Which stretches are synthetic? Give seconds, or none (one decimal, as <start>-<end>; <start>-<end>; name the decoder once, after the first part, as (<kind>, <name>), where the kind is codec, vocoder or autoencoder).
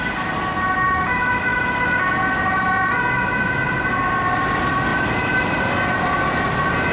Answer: 4.9-5.7 (vocoder, BigVGAN v2)